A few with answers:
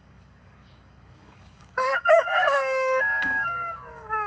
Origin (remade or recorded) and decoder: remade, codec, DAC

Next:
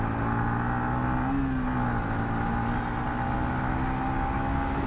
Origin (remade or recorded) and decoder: recorded